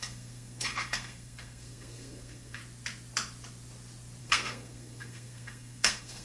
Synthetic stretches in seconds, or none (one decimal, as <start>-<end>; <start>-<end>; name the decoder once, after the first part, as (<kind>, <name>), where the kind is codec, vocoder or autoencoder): 0.0-2.6 (codec, SNAC); 4.2-6.2